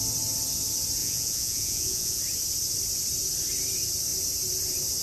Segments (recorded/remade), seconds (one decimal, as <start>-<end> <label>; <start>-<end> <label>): 0.0-1.0 recorded; 1.0-2.2 remade; 2.2-5.0 recorded